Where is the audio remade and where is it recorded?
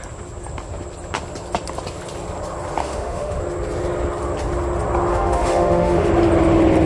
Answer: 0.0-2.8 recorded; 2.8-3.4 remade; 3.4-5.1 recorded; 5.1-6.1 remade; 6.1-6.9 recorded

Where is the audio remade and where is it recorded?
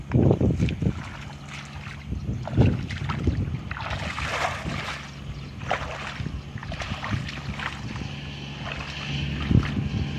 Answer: 0.0-6.6 recorded; 6.6-7.2 remade; 7.2-10.2 recorded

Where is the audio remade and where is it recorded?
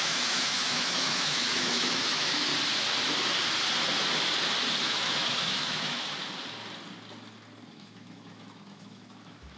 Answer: 0.0-2.5 remade; 2.5-4.8 recorded; 4.8-6.2 remade; 6.2-7.7 recorded; 7.7-9.6 remade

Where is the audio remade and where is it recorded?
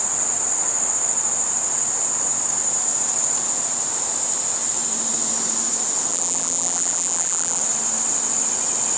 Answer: 0.0-6.1 recorded; 6.1-7.6 remade; 7.6-9.0 recorded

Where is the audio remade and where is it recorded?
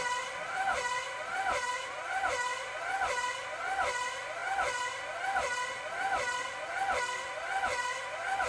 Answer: 0.0-8.5 recorded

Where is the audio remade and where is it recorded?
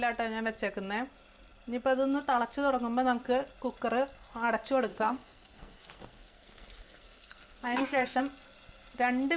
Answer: 0.0-4.9 recorded; 4.9-8.2 remade; 8.2-9.4 recorded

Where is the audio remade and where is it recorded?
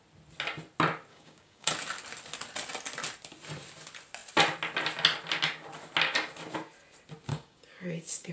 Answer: 0.0-1.1 recorded; 1.1-1.7 remade; 1.7-7.3 recorded; 7.3-8.3 remade